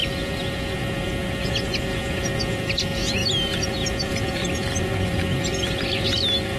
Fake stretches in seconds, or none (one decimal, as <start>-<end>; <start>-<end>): none